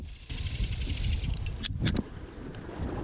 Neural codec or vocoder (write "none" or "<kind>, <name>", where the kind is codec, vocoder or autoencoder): vocoder, BigVGAN v2